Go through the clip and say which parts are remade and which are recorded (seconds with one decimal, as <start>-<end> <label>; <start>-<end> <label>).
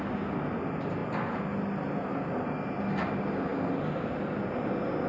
0.0-5.1 recorded